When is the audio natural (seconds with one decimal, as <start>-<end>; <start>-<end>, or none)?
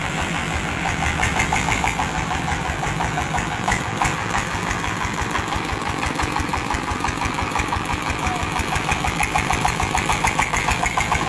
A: none